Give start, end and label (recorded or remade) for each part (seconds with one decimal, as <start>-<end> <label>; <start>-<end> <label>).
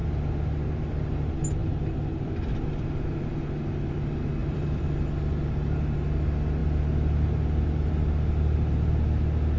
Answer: 0.0-1.6 recorded; 1.6-2.5 remade; 2.5-4.4 recorded; 4.4-5.1 remade; 5.1-9.6 recorded